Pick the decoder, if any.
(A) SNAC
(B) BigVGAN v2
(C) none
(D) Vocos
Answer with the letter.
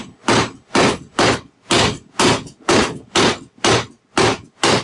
C